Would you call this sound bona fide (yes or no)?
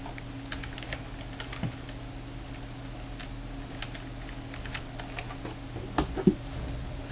yes